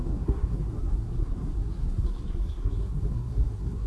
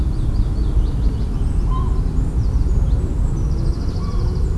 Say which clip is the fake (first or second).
first